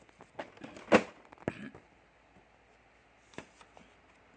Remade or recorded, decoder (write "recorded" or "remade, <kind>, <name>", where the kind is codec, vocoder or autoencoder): recorded